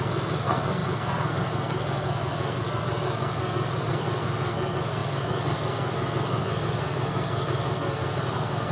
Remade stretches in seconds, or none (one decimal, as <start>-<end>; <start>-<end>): 0.0-8.7